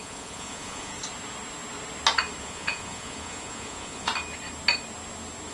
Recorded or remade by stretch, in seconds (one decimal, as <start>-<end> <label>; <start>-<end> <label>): 0.0-0.9 remade; 0.9-2.4 recorded; 2.4-4.1 remade; 4.1-5.5 recorded